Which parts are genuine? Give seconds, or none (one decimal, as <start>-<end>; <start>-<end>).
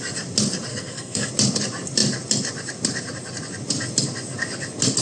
0.0-0.7; 1.3-5.0